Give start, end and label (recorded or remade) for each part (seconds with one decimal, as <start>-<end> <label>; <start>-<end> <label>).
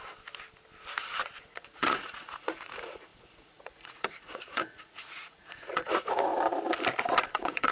0.0-1.4 recorded; 1.4-6.3 remade; 6.3-7.3 recorded; 7.3-7.7 remade